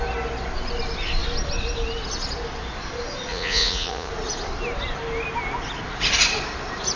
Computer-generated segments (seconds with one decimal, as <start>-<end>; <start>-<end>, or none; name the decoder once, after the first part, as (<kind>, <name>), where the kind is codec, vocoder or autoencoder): 3.3-4.1 (vocoder, Vocos)